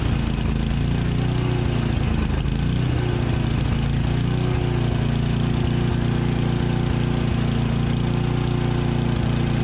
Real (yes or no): yes